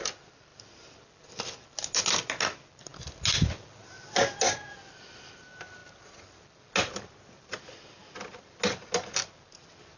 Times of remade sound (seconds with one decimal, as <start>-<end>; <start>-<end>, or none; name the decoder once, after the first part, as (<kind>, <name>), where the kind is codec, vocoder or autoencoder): none

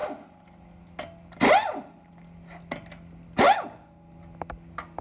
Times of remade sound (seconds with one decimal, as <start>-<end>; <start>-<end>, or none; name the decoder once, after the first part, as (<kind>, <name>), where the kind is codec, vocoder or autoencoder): none